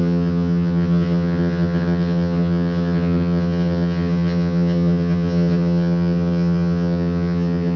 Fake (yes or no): yes